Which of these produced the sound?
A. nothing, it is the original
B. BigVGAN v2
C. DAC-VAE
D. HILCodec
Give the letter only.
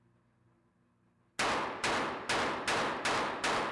A